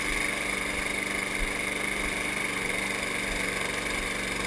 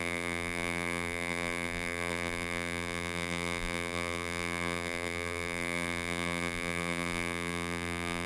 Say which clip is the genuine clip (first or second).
first